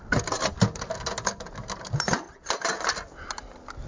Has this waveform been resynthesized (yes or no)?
no